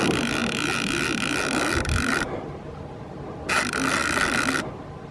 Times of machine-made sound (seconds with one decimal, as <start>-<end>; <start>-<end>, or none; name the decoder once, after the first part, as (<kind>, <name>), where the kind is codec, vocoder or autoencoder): none